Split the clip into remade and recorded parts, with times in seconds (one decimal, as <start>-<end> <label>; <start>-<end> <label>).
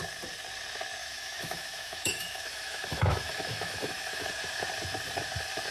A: 0.0-1.0 recorded; 1.0-4.3 remade; 4.3-5.7 recorded